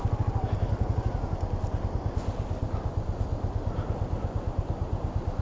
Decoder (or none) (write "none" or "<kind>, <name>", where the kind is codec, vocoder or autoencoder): none